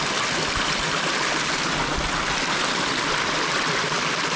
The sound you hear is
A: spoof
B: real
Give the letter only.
B